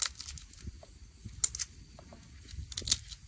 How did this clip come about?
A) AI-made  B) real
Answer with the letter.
B